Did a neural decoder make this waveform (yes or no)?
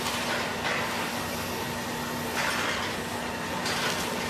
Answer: no